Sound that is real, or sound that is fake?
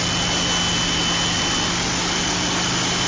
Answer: real